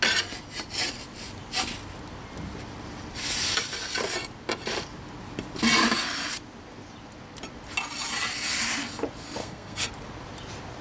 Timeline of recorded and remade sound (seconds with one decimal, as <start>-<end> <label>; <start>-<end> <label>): 0.0-9.4 recorded; 9.4-9.9 remade; 9.9-10.8 recorded